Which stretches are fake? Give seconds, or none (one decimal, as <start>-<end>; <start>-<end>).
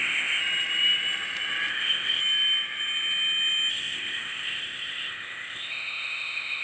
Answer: 0.0-0.4; 1.7-2.2; 3.7-6.6